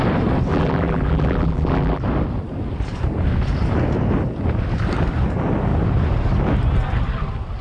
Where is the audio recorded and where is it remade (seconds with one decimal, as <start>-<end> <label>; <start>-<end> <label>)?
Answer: 0.0-0.5 recorded; 0.5-2.0 remade; 2.0-7.6 recorded